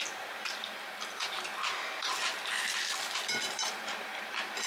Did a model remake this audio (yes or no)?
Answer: yes